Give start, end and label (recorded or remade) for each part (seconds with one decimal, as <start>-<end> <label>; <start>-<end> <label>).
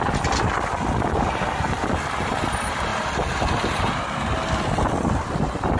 0.0-5.8 recorded